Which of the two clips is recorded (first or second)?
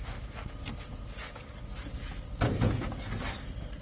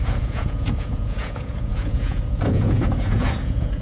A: first